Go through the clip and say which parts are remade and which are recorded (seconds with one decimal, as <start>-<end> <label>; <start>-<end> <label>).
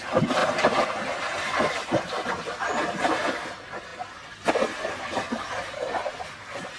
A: 0.0-0.4 recorded; 0.4-2.3 remade; 2.3-6.8 recorded